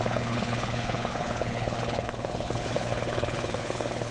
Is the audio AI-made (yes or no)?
yes